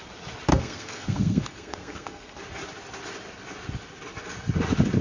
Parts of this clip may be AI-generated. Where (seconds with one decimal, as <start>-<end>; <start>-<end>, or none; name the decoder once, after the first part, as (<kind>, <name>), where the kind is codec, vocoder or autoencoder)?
0.5-2.4 (codec, SNAC)